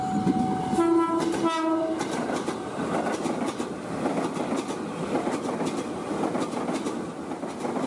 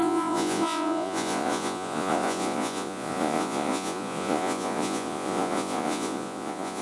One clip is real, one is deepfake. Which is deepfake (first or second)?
second